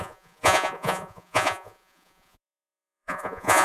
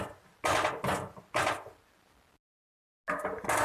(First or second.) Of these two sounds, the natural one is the second